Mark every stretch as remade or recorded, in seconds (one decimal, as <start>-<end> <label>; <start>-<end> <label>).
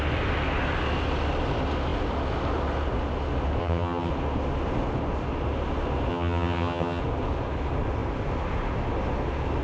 0.0-3.6 recorded; 3.6-4.1 remade; 4.1-6.1 recorded; 6.1-7.0 remade; 7.0-9.6 recorded